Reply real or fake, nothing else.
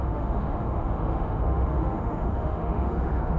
fake